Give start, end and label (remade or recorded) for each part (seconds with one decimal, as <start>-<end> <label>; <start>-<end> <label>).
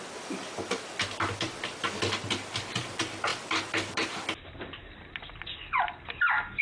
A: 0.0-6.6 recorded